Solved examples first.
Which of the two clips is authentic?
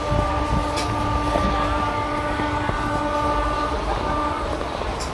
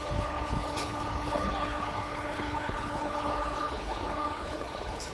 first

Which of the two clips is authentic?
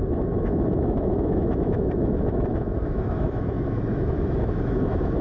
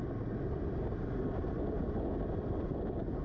second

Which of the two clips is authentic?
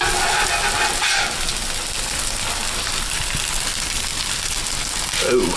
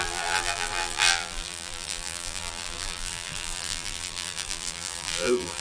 first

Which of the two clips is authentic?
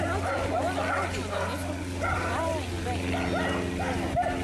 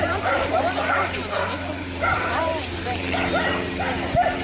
first